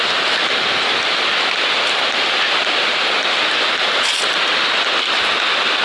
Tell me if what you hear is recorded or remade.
recorded